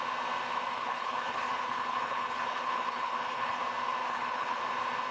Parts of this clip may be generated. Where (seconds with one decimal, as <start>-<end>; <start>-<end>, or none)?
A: 0.7-3.6; 4.0-4.6